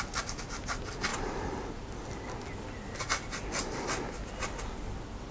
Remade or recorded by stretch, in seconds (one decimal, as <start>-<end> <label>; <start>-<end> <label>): 0.0-1.1 recorded; 1.1-1.7 remade; 1.7-5.3 recorded

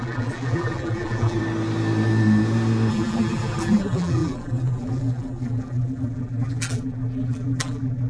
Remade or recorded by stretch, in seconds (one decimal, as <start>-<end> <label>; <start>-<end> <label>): 0.0-1.4 remade; 1.4-2.9 recorded; 2.9-8.1 remade

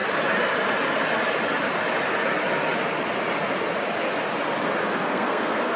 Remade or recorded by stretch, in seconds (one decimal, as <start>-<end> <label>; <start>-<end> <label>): 0.0-4.8 recorded; 4.8-5.8 remade

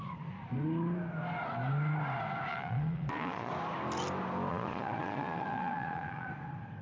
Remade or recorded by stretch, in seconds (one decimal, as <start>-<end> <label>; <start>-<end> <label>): 0.0-2.5 recorded; 2.5-3.5 remade; 3.5-4.5 recorded; 4.5-6.3 remade; 6.3-6.8 recorded

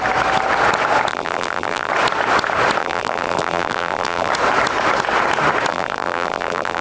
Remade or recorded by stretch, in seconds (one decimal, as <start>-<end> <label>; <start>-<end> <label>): 0.0-1.1 recorded; 1.1-1.9 remade; 1.9-2.8 recorded; 2.8-4.3 remade; 4.3-5.7 recorded; 5.7-6.8 remade

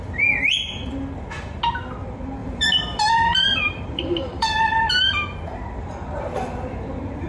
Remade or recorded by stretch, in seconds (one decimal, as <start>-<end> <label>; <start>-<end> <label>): 0.0-2.4 recorded; 2.4-3.0 remade; 3.0-3.5 recorded; 3.5-4.9 remade; 4.9-7.3 recorded